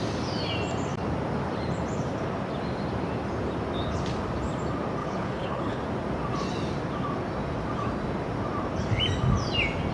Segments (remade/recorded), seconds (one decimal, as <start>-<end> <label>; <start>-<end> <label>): 0.0-5.0 recorded; 5.0-5.8 remade; 5.8-9.9 recorded